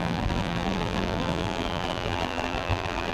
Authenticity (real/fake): fake